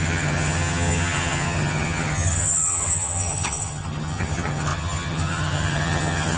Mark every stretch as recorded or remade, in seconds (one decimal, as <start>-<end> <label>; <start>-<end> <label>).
0.0-6.4 remade

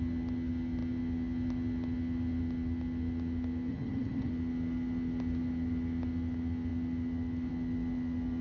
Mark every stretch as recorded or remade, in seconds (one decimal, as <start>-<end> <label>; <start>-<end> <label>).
0.0-3.7 recorded; 3.7-4.3 remade; 4.3-8.4 recorded